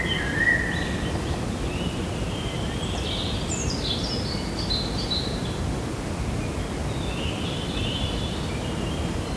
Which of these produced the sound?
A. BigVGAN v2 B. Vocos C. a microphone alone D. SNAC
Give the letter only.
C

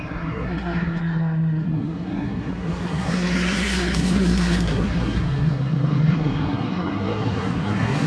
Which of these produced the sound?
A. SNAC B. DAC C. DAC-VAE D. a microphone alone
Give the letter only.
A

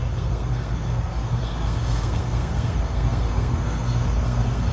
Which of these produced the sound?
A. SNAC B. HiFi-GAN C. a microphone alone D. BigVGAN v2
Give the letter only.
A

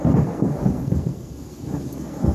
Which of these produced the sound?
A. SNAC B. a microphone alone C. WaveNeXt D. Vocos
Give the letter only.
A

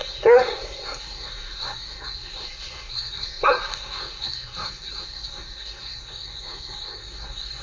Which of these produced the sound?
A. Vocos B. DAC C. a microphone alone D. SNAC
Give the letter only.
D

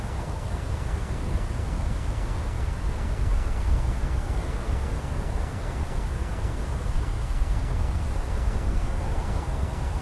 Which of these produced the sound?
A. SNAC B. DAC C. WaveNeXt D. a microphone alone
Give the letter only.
A